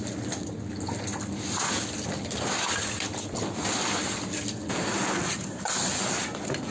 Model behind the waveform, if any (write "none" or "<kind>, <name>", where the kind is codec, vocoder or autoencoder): none